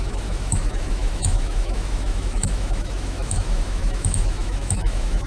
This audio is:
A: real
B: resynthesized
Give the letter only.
B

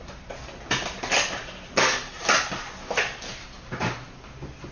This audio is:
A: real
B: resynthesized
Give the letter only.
A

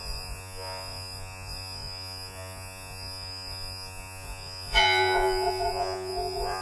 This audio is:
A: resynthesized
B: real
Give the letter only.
A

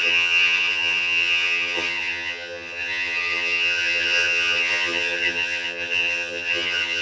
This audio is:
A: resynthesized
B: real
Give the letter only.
A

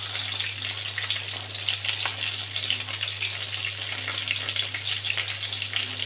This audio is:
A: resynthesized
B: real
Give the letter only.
B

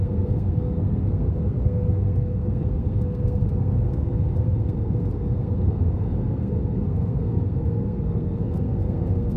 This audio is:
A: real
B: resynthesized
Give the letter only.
B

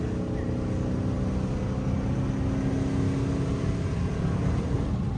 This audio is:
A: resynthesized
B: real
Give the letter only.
B